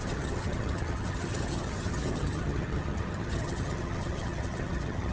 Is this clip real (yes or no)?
no